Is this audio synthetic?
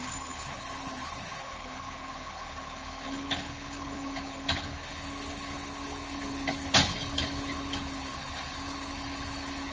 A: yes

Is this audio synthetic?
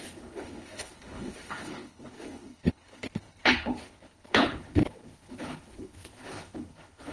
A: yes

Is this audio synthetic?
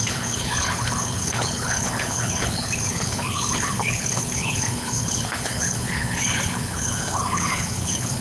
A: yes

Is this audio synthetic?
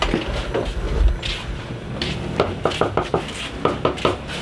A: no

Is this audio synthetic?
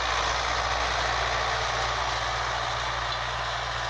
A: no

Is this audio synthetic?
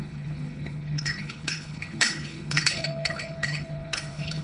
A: yes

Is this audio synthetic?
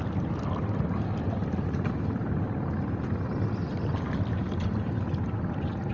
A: no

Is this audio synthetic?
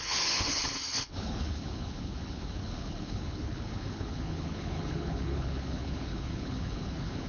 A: yes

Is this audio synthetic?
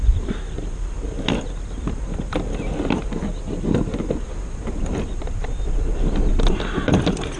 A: no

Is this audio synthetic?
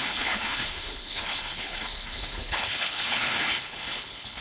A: yes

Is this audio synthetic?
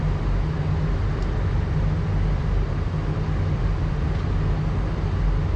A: no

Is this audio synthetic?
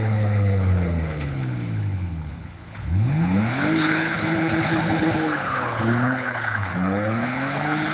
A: yes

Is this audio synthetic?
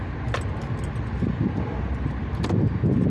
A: no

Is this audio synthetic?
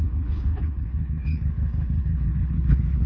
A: yes